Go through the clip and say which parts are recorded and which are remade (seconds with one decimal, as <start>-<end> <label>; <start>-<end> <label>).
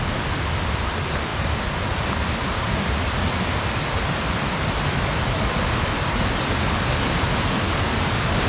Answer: 0.0-8.5 recorded